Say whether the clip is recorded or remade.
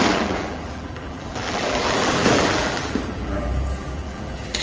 remade